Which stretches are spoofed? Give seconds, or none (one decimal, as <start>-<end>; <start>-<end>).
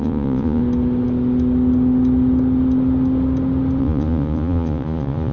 0.0-0.6; 3.8-5.3